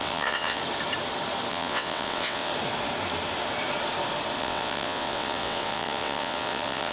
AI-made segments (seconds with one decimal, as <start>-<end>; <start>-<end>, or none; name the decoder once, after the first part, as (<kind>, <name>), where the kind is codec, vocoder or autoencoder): 0.0-0.6 (vocoder, WaveNeXt); 1.5-2.5; 4.4-6.9